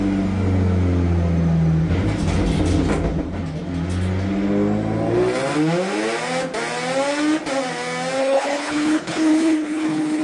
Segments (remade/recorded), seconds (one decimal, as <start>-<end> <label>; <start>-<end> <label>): 0.0-8.2 recorded; 8.2-10.2 remade